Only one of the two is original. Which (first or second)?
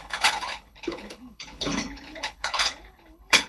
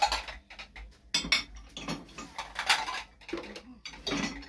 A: second